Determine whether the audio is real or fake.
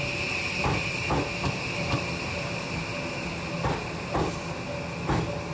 real